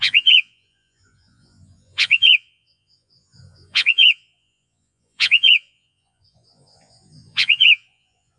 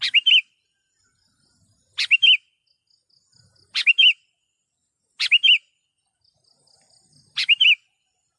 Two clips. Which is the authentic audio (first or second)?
second